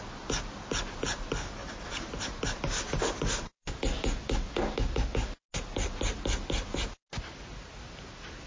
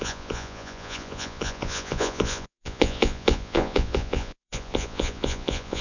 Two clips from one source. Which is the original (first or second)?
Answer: first